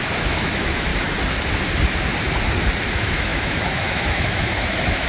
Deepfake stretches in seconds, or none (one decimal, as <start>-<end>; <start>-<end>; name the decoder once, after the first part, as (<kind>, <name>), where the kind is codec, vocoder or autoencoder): 0.0-0.9 (autoencoder, DAC-VAE); 2.9-5.1